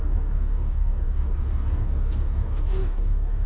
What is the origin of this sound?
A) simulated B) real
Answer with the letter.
A